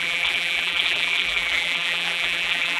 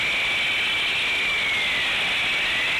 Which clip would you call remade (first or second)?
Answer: first